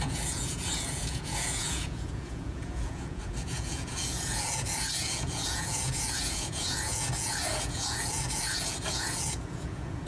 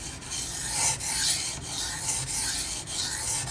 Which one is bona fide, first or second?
second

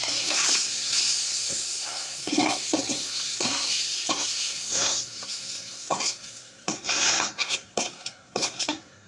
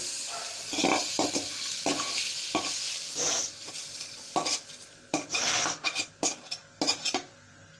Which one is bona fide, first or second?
second